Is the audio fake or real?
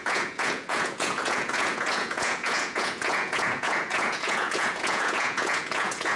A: fake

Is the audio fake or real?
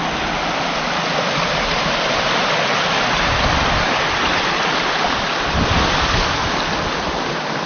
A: real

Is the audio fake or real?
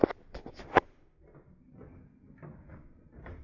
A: real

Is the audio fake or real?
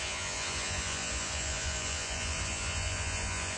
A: fake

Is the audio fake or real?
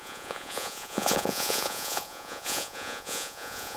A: fake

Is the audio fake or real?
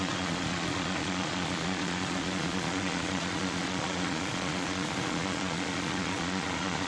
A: fake